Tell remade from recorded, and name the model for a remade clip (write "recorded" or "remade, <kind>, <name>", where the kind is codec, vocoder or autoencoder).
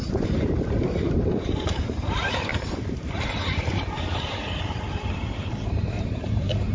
remade, vocoder, BigVGAN v2